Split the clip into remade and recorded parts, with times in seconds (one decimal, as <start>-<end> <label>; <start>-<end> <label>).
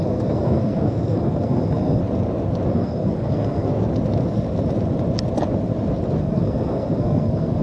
0.0-2.0 remade; 2.0-2.7 recorded; 2.7-3.7 remade; 3.7-6.2 recorded; 6.2-7.6 remade